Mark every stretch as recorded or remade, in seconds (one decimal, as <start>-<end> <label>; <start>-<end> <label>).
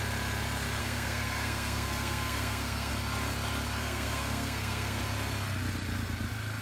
0.0-0.8 recorded; 0.8-2.9 remade; 2.9-3.8 recorded; 3.8-5.0 remade; 5.0-6.6 recorded